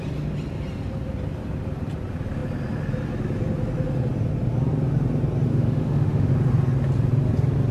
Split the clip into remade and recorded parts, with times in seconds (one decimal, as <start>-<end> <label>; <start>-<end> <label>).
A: 0.0-5.5 recorded; 5.5-6.3 remade; 6.3-7.7 recorded